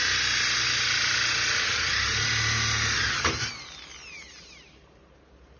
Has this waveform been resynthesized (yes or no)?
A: no